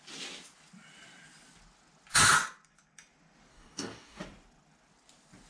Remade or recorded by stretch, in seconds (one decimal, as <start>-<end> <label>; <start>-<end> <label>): 0.0-3.5 recorded; 3.5-4.2 remade; 4.2-5.5 recorded